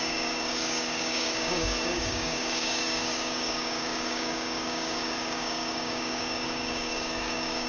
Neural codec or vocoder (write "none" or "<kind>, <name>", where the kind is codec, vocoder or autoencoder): codec, DAC